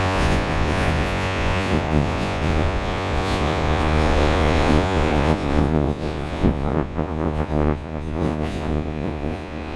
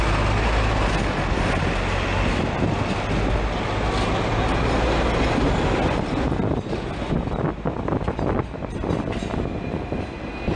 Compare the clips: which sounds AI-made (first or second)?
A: first